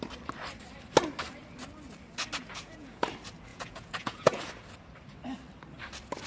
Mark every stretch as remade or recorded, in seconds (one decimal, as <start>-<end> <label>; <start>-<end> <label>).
0.0-2.4 recorded; 2.4-3.0 remade; 3.0-3.5 recorded; 3.5-4.4 remade; 4.4-6.3 recorded